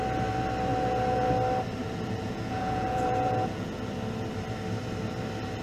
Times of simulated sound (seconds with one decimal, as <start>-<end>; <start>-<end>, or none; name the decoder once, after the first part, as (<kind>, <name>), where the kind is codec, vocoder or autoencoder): 0.7-1.3 (vocoder, Vocos); 1.8-3.8

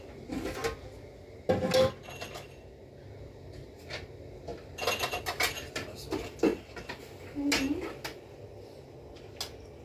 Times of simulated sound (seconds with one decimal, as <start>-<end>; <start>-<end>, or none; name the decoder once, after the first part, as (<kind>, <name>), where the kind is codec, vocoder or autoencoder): none

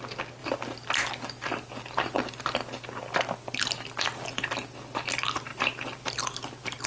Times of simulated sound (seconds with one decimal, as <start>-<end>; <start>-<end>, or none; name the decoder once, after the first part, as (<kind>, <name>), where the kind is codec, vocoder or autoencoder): 5.5-6.1 (vocoder, BigVGAN v2)

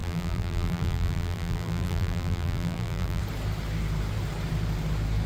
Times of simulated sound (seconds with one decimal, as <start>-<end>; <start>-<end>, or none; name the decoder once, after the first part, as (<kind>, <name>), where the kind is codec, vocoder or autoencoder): 0.0-3.2 (vocoder, BigVGAN v2)

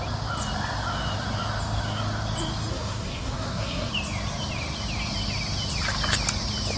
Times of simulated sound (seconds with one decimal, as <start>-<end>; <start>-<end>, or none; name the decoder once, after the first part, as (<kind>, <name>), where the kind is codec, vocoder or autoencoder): 2.7-3.9 (codec, SNAC)

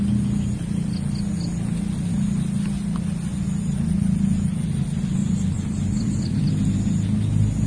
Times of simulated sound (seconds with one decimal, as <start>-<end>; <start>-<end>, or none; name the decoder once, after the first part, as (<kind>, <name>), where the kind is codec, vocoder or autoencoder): 5.2-6.5 (vocoder, BigVGAN v2)

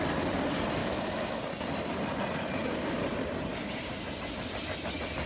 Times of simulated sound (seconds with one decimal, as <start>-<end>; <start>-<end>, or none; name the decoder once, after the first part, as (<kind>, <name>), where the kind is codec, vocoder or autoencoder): 0.8-1.4 (autoencoder, DAC-VAE)